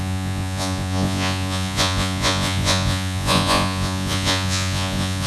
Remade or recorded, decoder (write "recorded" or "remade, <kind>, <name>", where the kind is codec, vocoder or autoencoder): remade, vocoder, Vocos